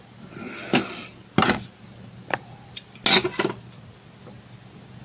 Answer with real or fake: real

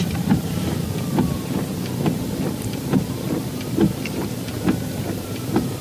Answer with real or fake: fake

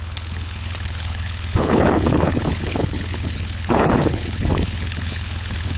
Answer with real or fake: fake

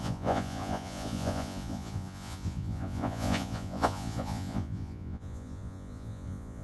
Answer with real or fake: fake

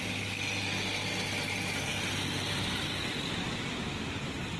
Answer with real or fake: real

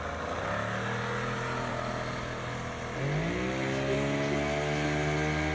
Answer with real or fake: real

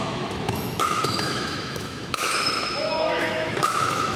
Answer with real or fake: fake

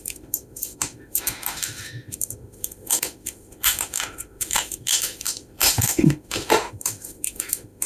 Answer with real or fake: fake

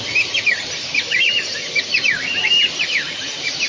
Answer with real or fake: real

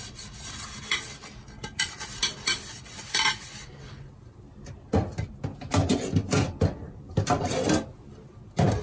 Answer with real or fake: real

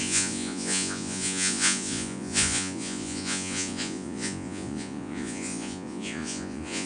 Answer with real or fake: fake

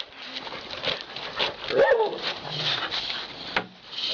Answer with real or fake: real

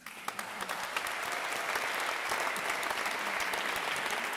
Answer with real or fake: real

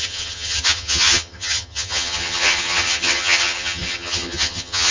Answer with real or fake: fake